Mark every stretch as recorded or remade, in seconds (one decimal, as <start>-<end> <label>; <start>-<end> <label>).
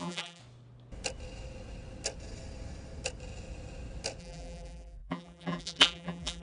0.0-0.4 remade; 0.4-4.2 recorded; 4.2-6.4 remade